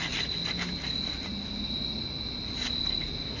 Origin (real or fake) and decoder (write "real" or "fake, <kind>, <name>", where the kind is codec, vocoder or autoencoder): real